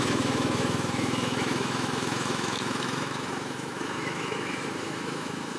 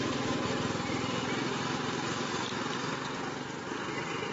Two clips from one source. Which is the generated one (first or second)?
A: first